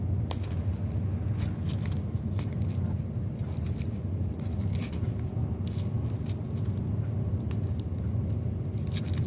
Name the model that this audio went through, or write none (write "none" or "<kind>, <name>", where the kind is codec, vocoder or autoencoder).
none